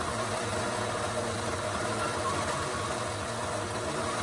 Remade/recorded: recorded